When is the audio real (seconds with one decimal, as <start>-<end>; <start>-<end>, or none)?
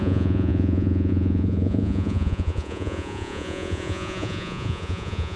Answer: none